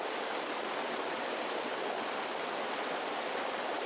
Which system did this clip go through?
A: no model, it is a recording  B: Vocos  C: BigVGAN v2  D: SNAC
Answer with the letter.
A